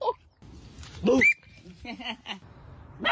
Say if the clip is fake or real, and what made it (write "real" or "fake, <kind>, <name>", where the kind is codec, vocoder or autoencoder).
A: fake, vocoder, BigVGAN v2